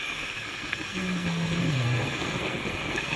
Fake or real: fake